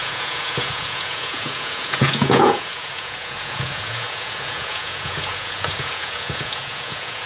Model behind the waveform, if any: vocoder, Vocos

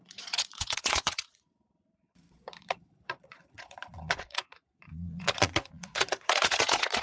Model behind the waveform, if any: vocoder, Vocos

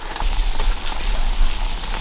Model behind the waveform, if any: none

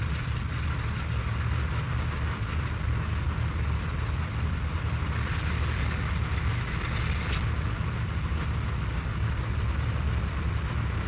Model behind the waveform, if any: none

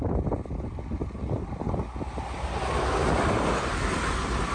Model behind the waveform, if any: none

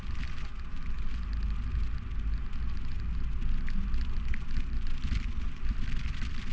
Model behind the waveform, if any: none